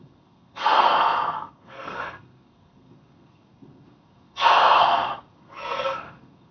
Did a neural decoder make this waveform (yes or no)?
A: yes